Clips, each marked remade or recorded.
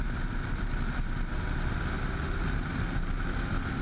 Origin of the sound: recorded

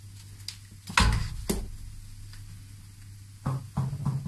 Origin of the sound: recorded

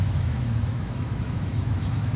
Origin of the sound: remade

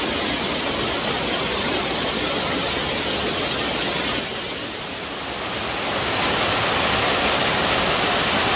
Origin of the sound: recorded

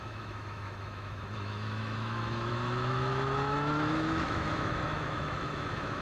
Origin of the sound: remade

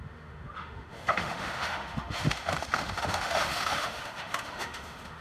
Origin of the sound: remade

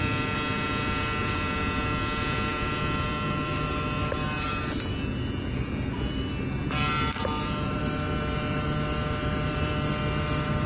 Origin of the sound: recorded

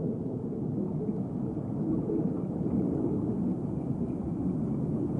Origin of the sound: recorded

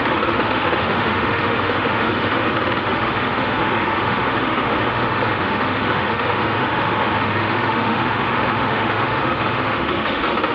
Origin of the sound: remade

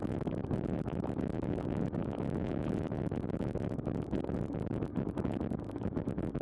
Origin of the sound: remade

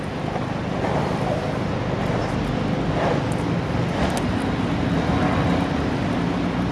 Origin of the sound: recorded